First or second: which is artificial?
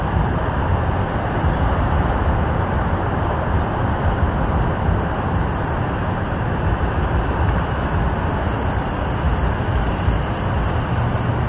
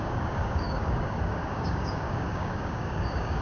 second